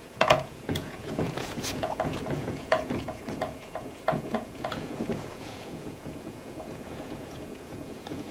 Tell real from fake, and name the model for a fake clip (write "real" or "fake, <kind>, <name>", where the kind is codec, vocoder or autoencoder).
fake, vocoder, Vocos